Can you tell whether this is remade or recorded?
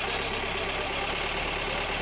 recorded